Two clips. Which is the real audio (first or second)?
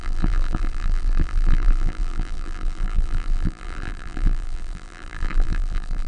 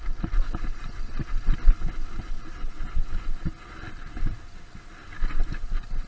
second